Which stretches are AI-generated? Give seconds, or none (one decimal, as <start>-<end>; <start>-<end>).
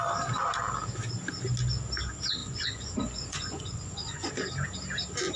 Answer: 2.4-4.3